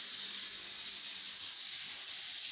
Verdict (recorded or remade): recorded